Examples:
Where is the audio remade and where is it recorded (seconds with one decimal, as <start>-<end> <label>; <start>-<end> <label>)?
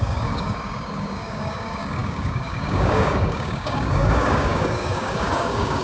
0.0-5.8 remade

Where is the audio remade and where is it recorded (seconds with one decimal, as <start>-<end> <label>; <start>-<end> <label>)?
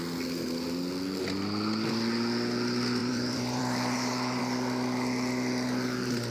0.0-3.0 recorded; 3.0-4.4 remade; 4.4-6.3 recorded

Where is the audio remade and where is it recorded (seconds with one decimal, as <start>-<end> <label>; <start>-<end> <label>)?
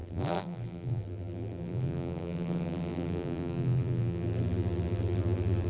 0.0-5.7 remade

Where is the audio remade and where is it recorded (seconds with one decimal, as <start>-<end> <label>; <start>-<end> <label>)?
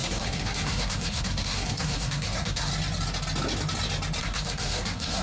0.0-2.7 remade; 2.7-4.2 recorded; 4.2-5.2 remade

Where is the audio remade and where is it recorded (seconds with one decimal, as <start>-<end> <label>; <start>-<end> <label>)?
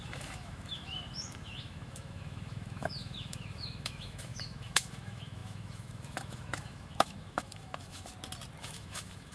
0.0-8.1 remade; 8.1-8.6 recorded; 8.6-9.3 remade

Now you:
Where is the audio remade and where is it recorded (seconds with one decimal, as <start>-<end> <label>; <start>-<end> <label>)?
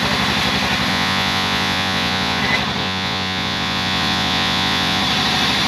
0.0-0.9 recorded; 0.9-2.4 remade; 2.4-2.8 recorded; 2.8-5.0 remade; 5.0-5.7 recorded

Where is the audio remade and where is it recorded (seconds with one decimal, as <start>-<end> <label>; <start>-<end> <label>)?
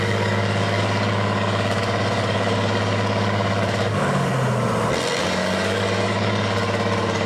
0.0-4.3 remade; 4.3-5.2 recorded; 5.2-7.3 remade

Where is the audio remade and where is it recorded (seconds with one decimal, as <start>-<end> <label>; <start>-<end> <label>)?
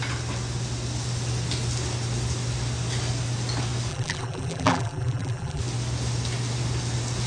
0.0-3.9 recorded; 3.9-5.6 remade; 5.6-7.3 recorded